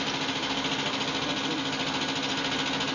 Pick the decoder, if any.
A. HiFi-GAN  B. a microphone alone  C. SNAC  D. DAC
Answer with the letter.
B